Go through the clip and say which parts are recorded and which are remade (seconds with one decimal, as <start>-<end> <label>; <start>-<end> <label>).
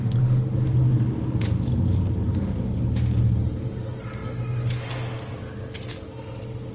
0.0-0.5 recorded; 0.5-3.2 remade; 3.2-6.7 recorded